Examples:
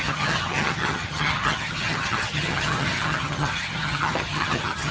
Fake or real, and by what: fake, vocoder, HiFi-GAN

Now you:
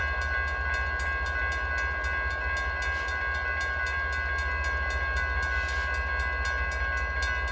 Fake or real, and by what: real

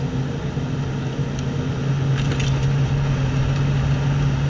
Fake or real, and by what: real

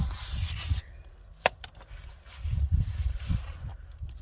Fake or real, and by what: real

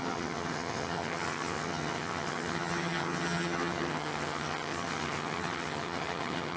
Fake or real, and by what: fake, vocoder, HiFi-GAN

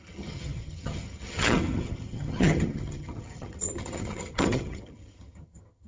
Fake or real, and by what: fake, vocoder, HiFi-GAN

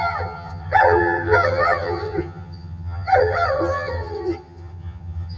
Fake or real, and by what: fake, vocoder, HiFi-GAN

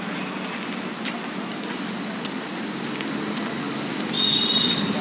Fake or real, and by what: real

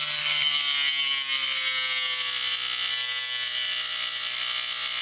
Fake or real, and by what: real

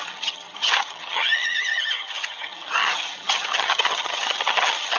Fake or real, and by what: fake, vocoder, HiFi-GAN